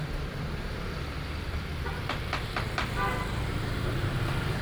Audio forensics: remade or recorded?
remade